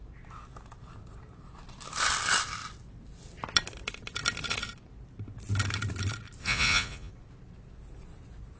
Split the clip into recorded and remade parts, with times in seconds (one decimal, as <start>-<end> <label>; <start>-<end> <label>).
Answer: 0.0-6.4 recorded; 6.4-7.1 remade; 7.1-8.6 recorded